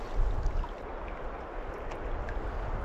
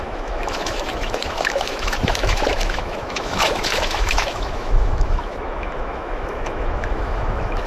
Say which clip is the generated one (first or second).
second